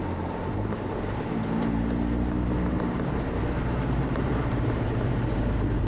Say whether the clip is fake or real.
fake